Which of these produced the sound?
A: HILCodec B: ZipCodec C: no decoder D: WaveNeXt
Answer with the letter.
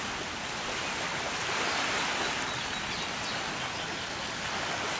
C